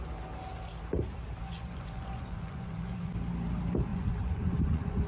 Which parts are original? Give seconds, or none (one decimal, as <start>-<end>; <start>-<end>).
0.0-1.4; 3.1-3.9